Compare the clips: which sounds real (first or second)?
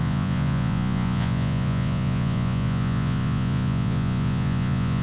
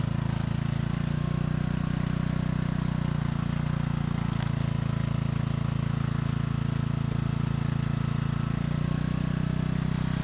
second